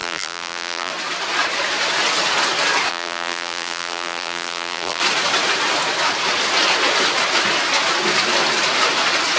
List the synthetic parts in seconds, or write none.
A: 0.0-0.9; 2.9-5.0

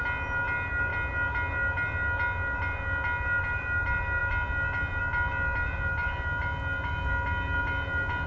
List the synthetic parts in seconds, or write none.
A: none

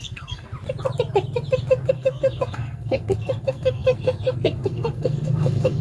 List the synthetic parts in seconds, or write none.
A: 0.0-0.5; 1.9-5.8

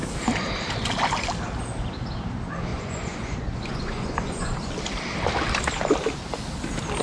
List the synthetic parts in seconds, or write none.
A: 2.7-4.7

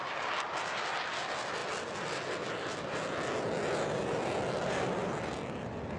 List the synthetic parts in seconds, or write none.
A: none